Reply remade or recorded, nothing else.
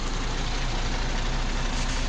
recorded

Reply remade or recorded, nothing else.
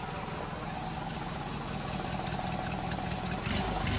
recorded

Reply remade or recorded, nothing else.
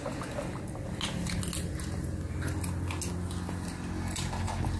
recorded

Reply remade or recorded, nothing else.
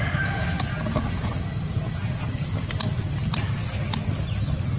recorded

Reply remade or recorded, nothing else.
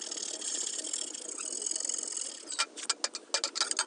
recorded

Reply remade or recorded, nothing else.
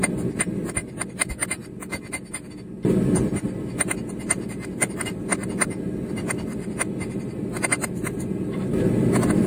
recorded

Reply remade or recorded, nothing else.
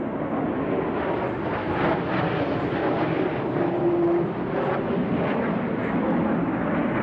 recorded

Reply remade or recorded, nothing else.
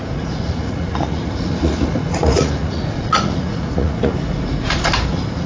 remade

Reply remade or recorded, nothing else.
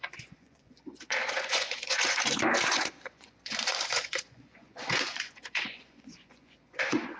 remade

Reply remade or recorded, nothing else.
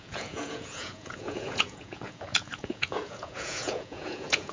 remade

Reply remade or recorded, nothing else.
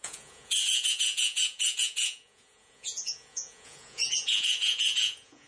remade